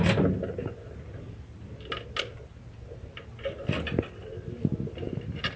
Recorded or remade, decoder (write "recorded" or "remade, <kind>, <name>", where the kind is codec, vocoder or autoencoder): recorded